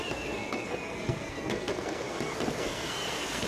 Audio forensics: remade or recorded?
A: remade